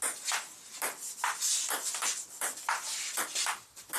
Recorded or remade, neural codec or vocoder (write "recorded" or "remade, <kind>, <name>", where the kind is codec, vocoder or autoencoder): recorded